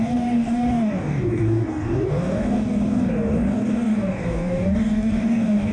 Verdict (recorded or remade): remade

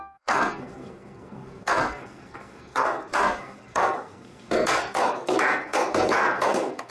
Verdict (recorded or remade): remade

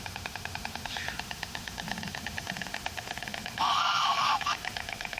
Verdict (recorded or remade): remade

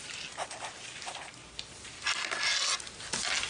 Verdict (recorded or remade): recorded